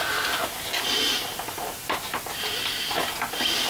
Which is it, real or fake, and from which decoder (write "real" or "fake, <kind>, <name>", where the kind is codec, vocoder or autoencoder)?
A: real